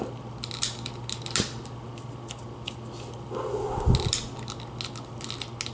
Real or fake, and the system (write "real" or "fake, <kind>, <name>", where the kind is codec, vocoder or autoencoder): real